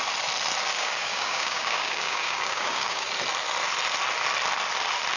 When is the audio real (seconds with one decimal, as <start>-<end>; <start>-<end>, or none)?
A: 0.0-0.7; 3.1-5.2